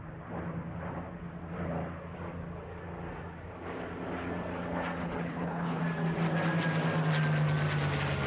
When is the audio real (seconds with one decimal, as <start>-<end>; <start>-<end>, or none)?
0.0-5.0; 5.8-8.3